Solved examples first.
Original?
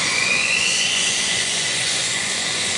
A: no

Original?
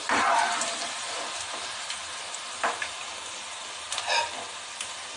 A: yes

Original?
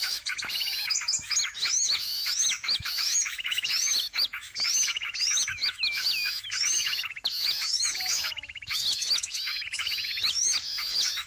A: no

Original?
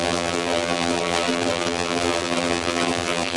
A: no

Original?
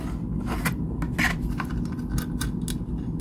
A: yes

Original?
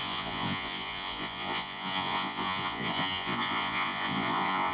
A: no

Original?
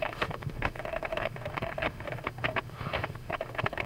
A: no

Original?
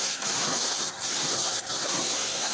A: no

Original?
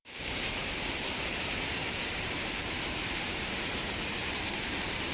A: no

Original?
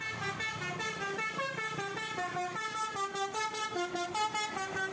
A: yes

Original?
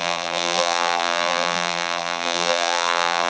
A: no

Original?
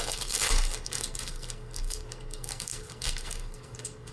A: no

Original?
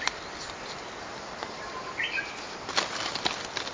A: yes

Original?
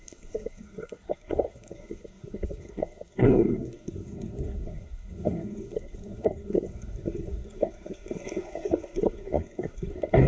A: no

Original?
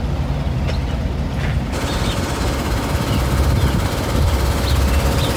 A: yes